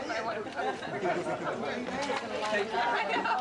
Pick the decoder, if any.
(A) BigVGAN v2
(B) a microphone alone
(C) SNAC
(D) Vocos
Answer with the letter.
B